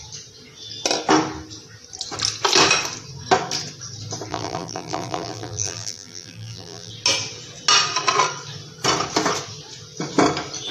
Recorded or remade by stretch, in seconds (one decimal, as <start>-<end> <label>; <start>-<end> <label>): 0.0-4.3 recorded; 4.3-6.9 remade; 6.9-10.7 recorded